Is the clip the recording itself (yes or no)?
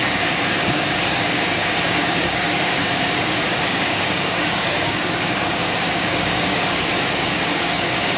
no